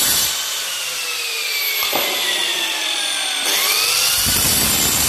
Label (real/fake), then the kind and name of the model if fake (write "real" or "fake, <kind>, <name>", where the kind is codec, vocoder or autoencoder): real